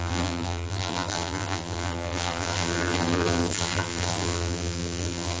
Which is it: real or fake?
fake